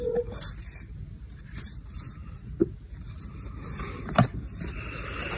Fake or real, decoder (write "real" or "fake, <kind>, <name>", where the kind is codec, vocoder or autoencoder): fake, vocoder, BigVGAN v2